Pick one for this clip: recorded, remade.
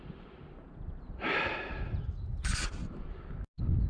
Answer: recorded